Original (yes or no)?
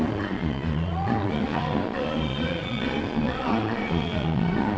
no